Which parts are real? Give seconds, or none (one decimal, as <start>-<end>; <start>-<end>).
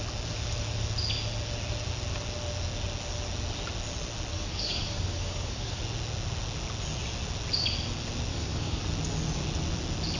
0.0-4.3; 5.8-8.3; 8.8-10.2